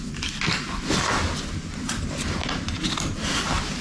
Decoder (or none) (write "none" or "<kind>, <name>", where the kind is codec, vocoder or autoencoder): none